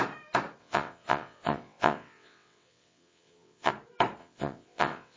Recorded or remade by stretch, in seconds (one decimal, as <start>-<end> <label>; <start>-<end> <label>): 0.0-0.6 recorded; 0.6-3.7 remade; 3.7-4.2 recorded; 4.2-5.2 remade